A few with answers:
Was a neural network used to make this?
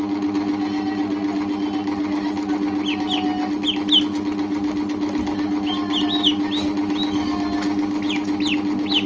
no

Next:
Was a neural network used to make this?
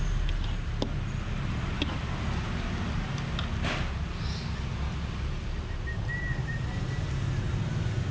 no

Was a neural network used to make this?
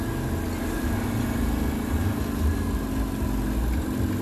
no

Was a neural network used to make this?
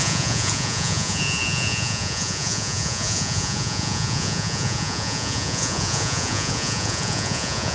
yes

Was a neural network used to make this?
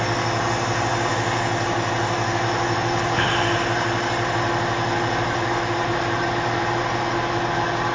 no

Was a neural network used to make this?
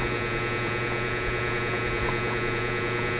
yes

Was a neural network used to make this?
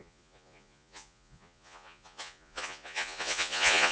yes